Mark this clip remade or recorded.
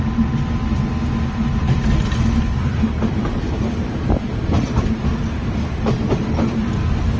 recorded